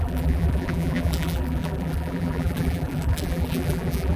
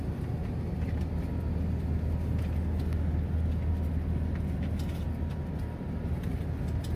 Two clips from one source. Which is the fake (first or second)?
first